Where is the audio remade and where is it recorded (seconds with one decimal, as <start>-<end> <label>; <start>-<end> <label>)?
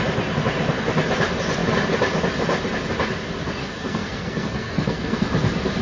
0.0-3.6 recorded; 3.6-5.3 remade; 5.3-5.8 recorded